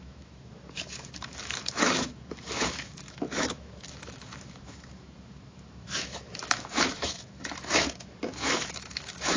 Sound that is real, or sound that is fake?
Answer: fake